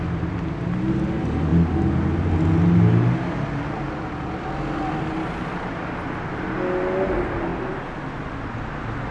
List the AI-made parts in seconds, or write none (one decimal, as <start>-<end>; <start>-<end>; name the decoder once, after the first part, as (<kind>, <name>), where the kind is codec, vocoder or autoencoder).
none